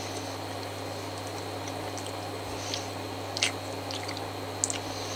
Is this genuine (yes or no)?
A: yes